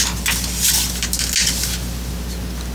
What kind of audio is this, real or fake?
real